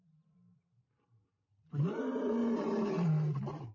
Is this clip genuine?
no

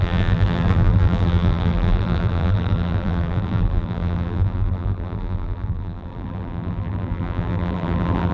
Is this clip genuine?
no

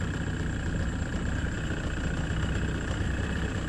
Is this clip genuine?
no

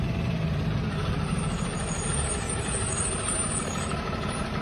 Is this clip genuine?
no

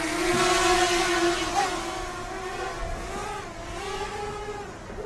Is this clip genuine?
yes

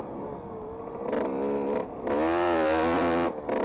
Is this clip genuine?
yes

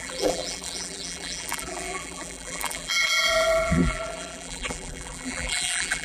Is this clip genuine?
no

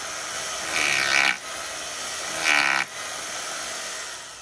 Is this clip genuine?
yes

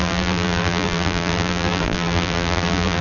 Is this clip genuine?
no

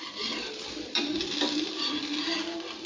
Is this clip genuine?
no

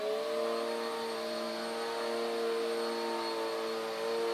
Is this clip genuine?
yes